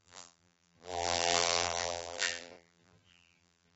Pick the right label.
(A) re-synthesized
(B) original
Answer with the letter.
A